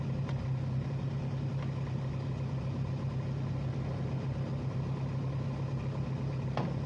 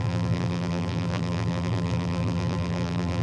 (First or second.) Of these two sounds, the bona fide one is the first